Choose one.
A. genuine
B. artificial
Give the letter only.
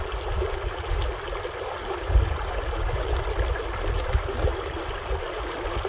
A